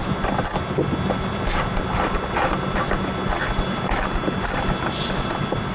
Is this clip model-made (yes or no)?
no